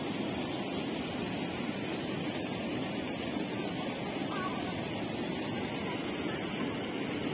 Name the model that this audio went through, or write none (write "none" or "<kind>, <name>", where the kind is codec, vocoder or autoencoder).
none